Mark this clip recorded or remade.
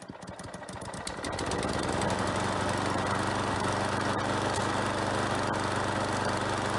recorded